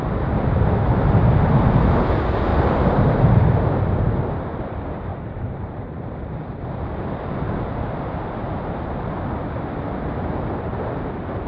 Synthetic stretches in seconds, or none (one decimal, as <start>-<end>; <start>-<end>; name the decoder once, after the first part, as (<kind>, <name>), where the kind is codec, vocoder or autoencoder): 2.5-3.8 (vocoder, BigVGAN v2); 5.1-6.8; 8.4-9.1